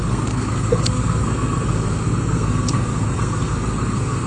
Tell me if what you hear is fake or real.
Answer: fake